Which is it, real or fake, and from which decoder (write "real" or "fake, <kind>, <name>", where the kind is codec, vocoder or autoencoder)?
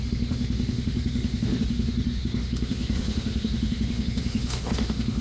fake, autoencoder, DAC-VAE